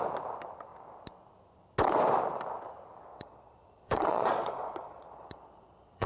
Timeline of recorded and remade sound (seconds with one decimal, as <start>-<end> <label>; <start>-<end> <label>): 0.0-3.1 recorded; 3.1-6.1 remade